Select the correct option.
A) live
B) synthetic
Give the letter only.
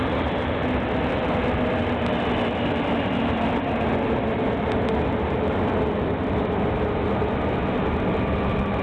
A